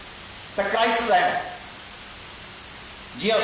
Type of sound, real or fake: real